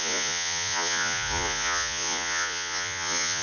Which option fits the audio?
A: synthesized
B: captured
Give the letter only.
A